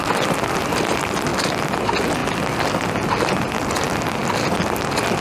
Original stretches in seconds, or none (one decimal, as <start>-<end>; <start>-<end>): 0.0-5.2